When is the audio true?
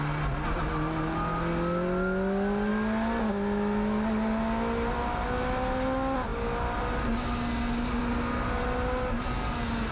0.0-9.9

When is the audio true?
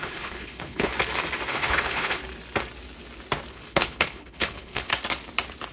0.9-1.5; 2.2-3.5; 4.9-5.7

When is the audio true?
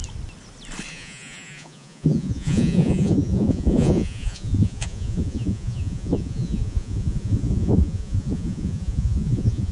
0.0-0.9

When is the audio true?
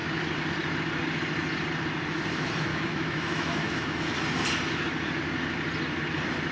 0.0-2.7; 4.0-6.5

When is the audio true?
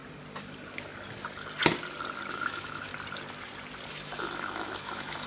0.0-2.3; 2.9-3.9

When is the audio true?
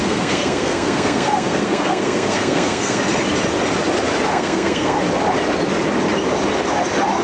3.0-4.3; 5.0-7.2